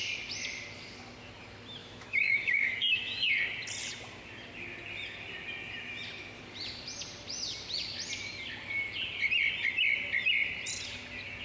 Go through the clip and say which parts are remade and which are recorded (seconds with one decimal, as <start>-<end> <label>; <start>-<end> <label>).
0.0-1.8 recorded; 1.8-3.3 remade; 3.3-11.4 recorded